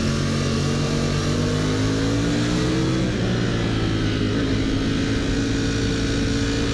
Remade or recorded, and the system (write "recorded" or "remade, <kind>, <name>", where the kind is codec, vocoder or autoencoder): recorded